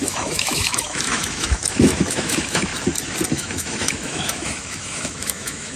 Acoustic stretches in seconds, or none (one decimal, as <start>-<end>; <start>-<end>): 2.7-3.3